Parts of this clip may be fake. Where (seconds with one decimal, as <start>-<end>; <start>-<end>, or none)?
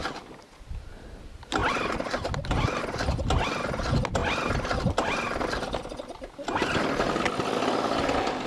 none